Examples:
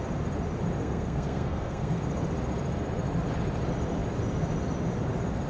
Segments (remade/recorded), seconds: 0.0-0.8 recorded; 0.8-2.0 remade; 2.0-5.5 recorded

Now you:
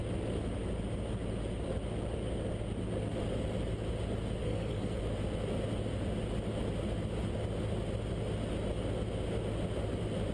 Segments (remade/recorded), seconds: 0.0-4.4 recorded; 4.4-5.0 remade; 5.0-10.3 recorded

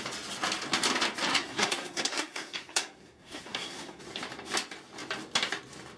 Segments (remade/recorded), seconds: 0.0-1.3 recorded; 1.3-4.0 remade; 4.0-6.0 recorded

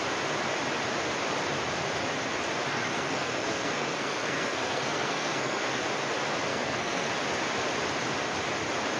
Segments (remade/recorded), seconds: 0.0-2.7 recorded; 2.7-5.8 remade; 5.8-6.5 recorded; 6.5-7.1 remade; 7.1-9.0 recorded

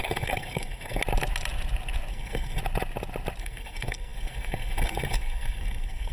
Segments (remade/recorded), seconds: 0.0-1.0 remade; 1.0-2.1 recorded; 2.1-2.6 remade; 2.6-3.4 recorded; 3.4-6.1 remade